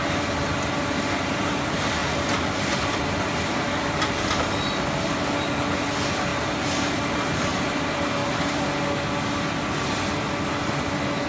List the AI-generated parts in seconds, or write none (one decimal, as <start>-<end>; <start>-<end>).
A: none

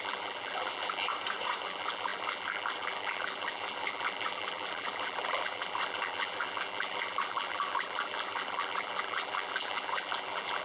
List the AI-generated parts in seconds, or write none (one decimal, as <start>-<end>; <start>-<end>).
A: 0.0-1.1; 1.6-10.6

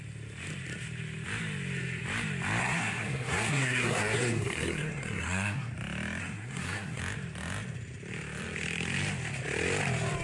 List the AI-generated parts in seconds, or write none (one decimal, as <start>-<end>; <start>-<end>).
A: 2.6-5.7; 6.2-7.0

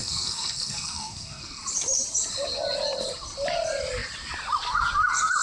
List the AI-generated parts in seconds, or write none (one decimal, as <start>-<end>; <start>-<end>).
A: 0.0-1.6

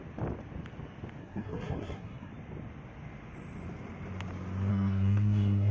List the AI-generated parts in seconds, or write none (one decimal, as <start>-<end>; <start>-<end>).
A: 1.2-2.3; 4.7-5.7

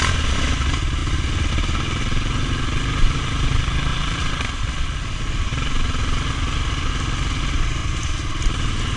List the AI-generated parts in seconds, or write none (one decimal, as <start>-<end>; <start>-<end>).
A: 3.9-4.7; 7.8-8.6

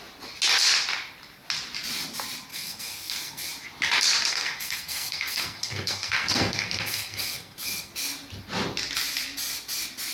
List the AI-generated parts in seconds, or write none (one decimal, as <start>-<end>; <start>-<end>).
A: 2.5-3.5; 4.3-7.9

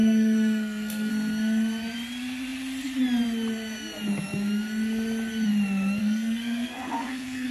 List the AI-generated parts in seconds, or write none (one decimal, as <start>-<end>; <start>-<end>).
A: 0.0-1.1; 6.0-7.5